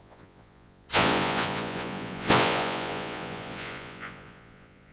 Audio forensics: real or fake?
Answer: fake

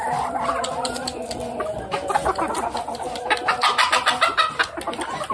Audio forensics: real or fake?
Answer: real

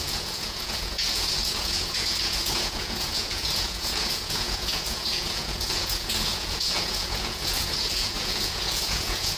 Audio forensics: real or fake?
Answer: fake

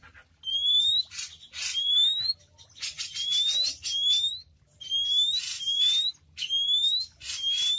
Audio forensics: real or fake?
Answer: real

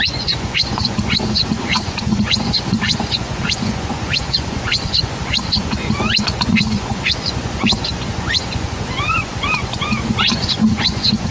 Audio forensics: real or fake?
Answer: fake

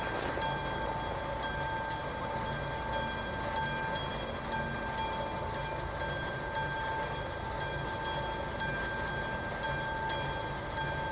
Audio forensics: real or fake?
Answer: real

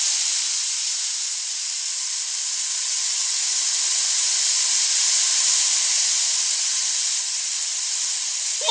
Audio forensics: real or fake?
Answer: real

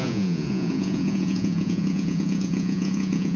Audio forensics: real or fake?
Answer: fake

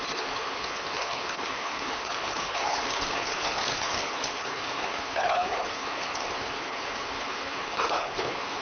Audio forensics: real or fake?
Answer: fake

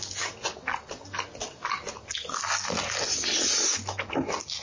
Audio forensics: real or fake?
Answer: real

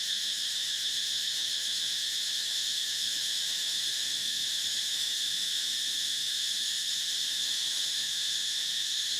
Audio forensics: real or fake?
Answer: fake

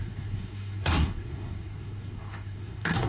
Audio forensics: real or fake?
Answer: fake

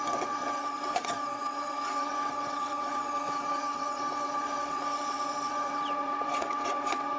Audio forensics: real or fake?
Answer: fake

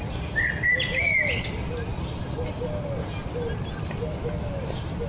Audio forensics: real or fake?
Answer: real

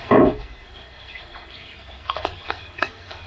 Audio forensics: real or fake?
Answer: fake